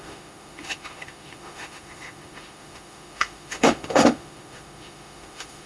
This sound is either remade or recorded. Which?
remade